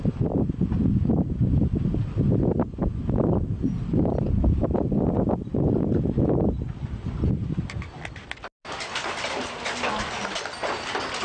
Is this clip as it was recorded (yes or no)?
yes